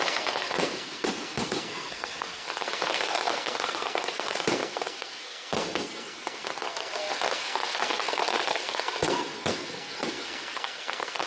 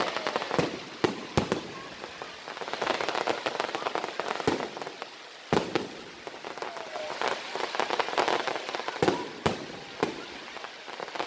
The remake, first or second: first